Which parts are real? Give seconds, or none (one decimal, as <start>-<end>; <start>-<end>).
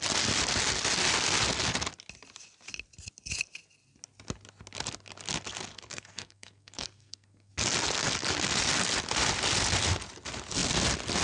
0.0-5.7; 7.5-11.2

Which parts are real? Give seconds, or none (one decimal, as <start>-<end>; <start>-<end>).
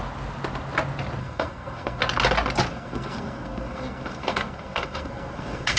0.0-1.2; 2.0-2.7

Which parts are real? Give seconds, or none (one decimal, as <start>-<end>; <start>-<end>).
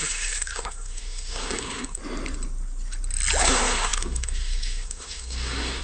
2.0-3.4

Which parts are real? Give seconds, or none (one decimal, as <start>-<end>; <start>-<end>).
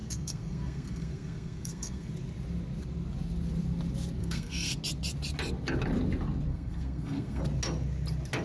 2.1-4.2; 4.8-6.5; 7.4-8.4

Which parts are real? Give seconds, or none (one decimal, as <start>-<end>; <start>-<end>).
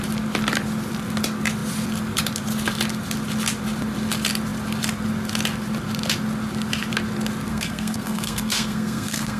0.0-7.5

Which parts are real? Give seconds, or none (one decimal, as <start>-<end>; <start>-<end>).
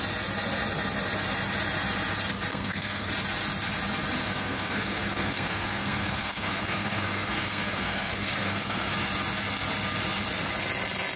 0.0-2.5; 3.1-4.2; 8.9-11.2